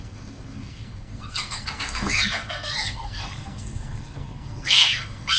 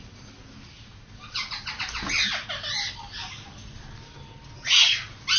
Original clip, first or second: second